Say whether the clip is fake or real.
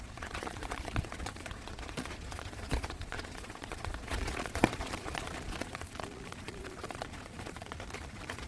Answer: fake